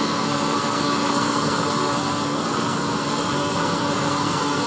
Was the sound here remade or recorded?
remade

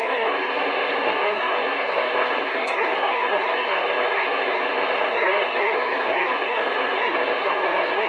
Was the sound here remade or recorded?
remade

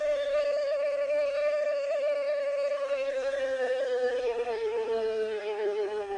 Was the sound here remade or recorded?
remade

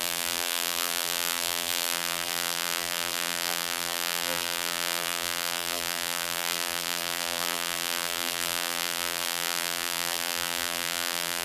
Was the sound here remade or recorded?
remade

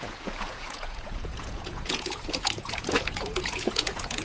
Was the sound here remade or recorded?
remade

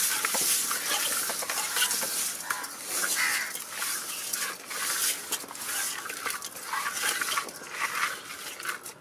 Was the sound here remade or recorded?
recorded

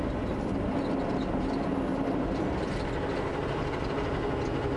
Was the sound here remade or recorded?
recorded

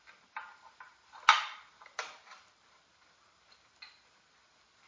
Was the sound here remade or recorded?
recorded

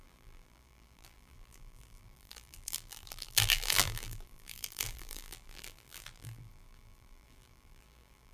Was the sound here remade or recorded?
remade